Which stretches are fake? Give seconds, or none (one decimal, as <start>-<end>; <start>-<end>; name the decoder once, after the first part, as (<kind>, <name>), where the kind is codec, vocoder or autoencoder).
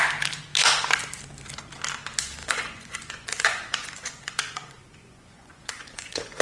2.4-6.4 (vocoder, Vocos)